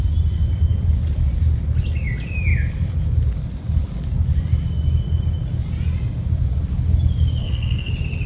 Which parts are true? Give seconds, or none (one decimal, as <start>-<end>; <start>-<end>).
0.0-7.4; 7.9-8.3